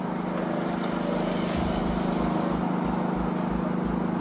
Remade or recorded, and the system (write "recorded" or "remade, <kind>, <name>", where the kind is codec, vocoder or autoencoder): recorded